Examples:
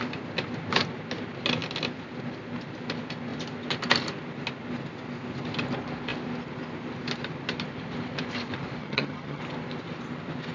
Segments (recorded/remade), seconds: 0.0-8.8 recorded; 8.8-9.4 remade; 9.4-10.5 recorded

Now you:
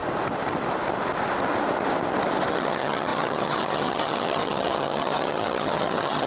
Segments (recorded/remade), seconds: 0.0-2.5 recorded; 2.5-6.3 remade

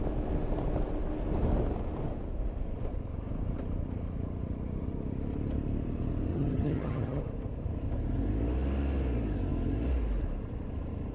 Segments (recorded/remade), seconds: 0.0-6.3 recorded; 6.3-7.2 remade; 7.2-11.1 recorded